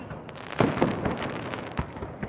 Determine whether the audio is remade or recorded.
recorded